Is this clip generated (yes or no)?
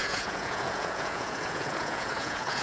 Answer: yes